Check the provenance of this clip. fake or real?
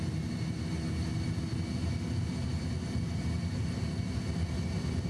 real